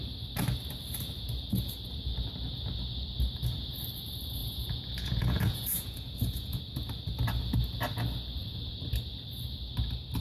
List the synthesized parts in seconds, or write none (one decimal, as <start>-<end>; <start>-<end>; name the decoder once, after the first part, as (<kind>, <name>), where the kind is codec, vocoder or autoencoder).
4.4-6.6 (vocoder, Vocos)